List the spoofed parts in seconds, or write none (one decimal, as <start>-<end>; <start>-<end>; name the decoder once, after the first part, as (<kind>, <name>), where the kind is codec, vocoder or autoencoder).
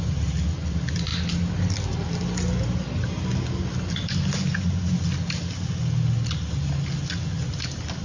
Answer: none